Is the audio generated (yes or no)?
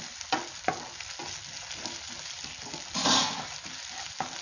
no